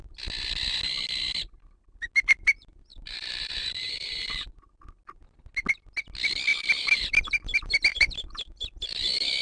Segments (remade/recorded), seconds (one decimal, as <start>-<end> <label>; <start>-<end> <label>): 0.0-2.9 recorded; 2.9-4.5 remade; 4.5-6.5 recorded; 6.5-7.2 remade; 7.2-7.9 recorded; 7.9-8.7 remade; 8.7-9.4 recorded